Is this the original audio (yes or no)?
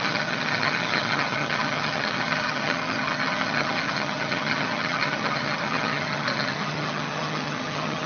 no